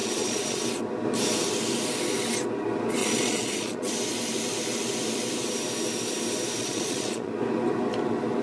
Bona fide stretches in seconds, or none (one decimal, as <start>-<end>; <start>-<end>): 0.6-3.0; 3.9-6.6; 7.3-8.4